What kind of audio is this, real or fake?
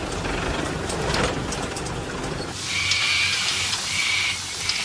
real